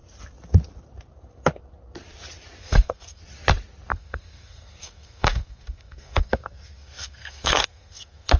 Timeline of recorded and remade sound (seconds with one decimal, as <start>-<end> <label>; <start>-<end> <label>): 0.0-2.6 recorded; 2.6-3.2 remade; 3.2-3.9 recorded; 3.9-8.4 remade